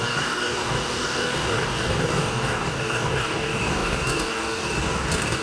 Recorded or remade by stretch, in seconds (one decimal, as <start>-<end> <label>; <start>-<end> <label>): 0.0-5.4 remade